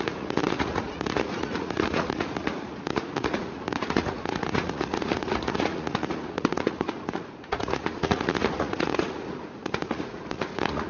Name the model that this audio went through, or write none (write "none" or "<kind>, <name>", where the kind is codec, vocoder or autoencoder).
vocoder, Vocos